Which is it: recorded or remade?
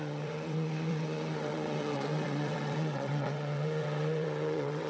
remade